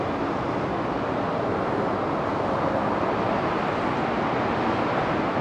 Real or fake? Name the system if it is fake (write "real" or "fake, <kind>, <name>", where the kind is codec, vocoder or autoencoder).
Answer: real